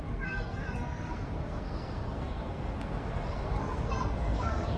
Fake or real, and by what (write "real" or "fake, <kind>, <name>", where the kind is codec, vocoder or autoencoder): fake, codec, SNAC